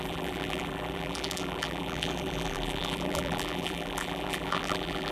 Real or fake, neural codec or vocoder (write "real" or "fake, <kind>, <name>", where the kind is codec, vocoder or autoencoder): fake, vocoder, BigVGAN v2